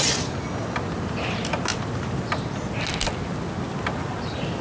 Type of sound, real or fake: real